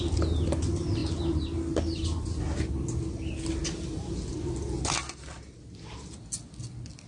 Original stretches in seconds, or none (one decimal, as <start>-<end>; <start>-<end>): 0.0-7.1